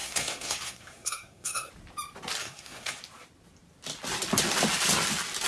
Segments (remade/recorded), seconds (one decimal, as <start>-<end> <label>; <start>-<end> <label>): 0.0-1.7 remade; 1.7-2.4 recorded; 2.4-3.0 remade; 3.0-5.5 recorded